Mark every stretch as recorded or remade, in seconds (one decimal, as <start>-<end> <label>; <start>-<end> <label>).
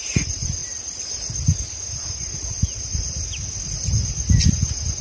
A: 0.0-5.0 recorded